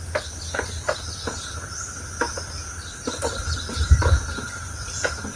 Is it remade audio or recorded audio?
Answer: recorded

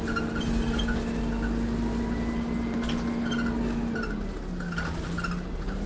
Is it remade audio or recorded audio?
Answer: recorded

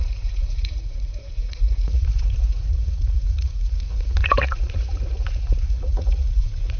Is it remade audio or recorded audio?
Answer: remade